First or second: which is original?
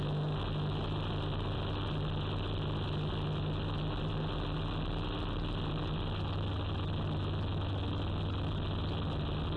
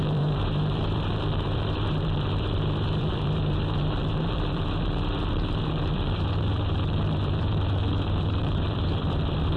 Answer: first